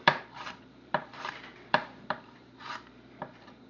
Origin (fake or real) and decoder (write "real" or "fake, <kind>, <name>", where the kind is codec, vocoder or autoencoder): fake, vocoder, BigVGAN v2